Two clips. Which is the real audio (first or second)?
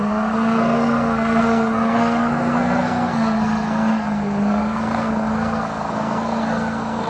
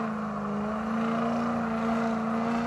second